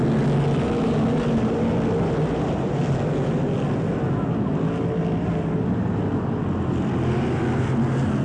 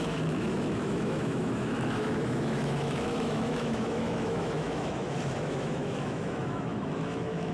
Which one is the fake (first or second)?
second